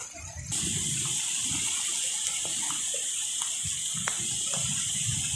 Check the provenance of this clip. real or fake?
real